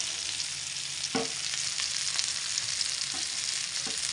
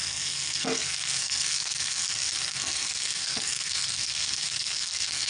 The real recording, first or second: first